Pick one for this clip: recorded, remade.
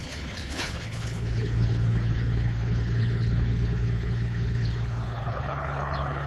remade